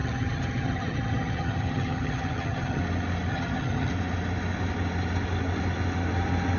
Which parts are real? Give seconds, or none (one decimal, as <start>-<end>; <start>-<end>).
2.8-3.3; 3.9-6.6